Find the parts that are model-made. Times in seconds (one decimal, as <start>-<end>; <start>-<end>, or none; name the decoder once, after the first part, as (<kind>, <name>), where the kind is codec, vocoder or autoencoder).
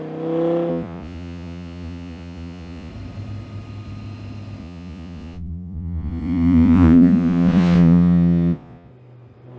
0.7-2.9 (vocoder, Vocos); 4.6-8.9